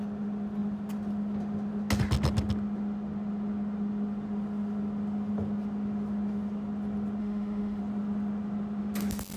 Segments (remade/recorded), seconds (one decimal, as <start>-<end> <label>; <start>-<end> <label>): 0.0-7.2 recorded; 7.2-7.8 remade; 7.8-9.4 recorded